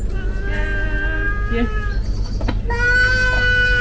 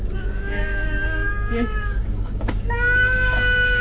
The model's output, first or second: second